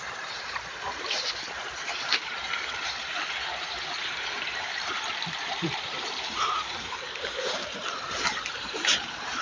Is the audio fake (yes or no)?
yes